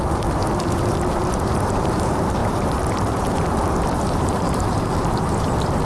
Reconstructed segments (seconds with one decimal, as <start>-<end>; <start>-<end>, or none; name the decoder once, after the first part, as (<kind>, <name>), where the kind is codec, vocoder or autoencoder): 0.0-5.8 (vocoder, BigVGAN v2)